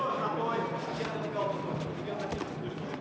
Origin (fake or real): real